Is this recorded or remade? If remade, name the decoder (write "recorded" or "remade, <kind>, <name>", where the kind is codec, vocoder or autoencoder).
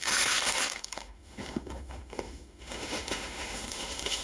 remade, autoencoder, DAC-VAE